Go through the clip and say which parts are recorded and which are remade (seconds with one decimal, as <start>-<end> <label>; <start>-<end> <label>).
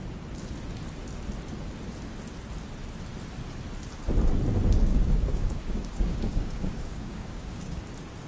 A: 0.0-4.9 recorded; 4.9-7.8 remade; 7.8-8.3 recorded